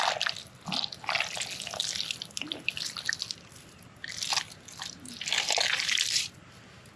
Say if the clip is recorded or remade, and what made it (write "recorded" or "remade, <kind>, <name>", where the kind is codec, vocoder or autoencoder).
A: recorded